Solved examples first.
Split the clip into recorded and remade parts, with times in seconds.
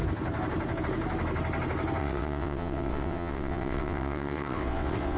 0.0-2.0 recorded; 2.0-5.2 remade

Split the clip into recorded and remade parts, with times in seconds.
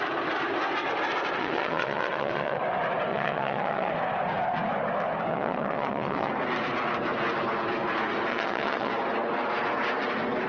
0.0-1.4 recorded; 1.4-2.6 remade; 2.6-3.1 recorded; 3.1-3.9 remade; 3.9-5.3 recorded; 5.3-6.3 remade; 6.3-8.3 recorded; 8.3-8.9 remade; 8.9-10.5 recorded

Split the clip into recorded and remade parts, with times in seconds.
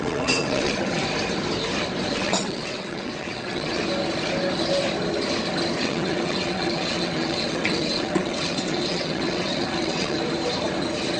0.0-1.0 remade; 1.0-2.1 recorded; 2.1-3.8 remade; 3.8-5.8 recorded; 5.8-10.2 remade; 10.2-11.2 recorded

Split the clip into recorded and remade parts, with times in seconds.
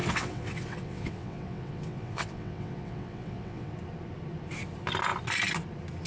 0.0-3.7 remade; 3.7-6.1 recorded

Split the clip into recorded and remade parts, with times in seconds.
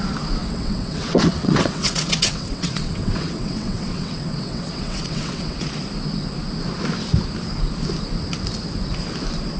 0.0-0.4 recorded; 0.4-5.7 remade; 5.7-9.6 recorded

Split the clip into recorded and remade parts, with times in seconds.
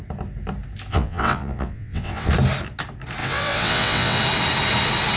0.0-0.9 recorded; 0.9-2.3 remade; 2.3-3.2 recorded; 3.2-4.2 remade; 4.2-5.2 recorded